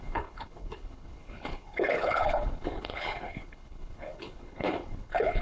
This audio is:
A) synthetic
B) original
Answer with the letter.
A